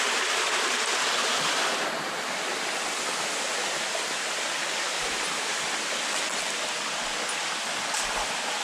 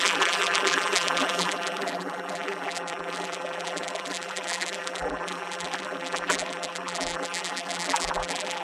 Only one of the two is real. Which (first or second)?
first